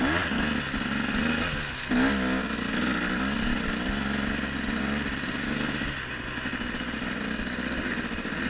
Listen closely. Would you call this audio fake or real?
real